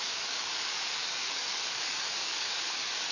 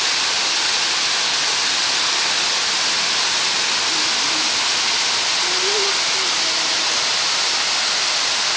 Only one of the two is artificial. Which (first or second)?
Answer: first